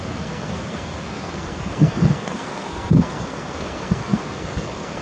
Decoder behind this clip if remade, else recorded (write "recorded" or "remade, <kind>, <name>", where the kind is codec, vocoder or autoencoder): remade, codec, SNAC